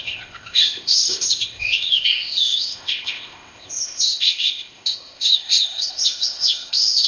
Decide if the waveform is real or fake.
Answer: fake